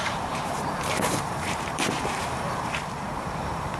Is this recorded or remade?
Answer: remade